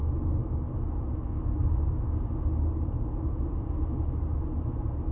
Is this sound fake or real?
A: real